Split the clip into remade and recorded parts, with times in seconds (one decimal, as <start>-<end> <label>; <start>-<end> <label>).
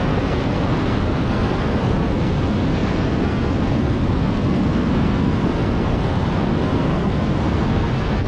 0.0-8.3 remade